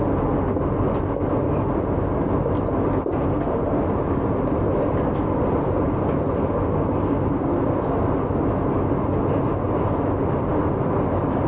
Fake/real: real